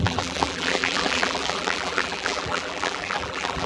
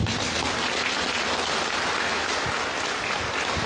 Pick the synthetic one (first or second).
first